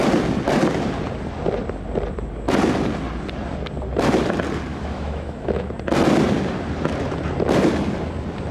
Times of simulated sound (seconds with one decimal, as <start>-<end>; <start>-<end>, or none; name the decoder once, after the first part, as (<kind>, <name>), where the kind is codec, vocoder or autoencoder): 4.7-5.7 (autoencoder, DAC-VAE)